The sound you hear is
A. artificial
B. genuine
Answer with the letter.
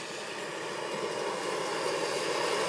B